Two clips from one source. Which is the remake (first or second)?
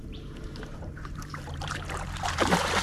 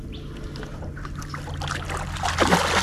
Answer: first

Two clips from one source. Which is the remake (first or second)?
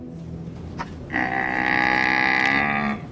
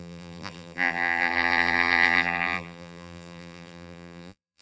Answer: second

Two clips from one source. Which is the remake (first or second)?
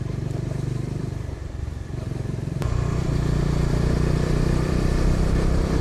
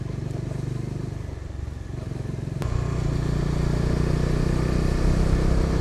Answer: first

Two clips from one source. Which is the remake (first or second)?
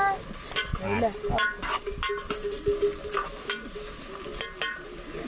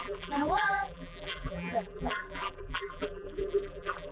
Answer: second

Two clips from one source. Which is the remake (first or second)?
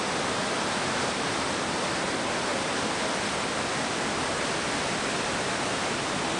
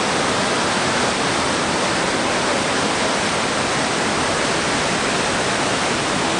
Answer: second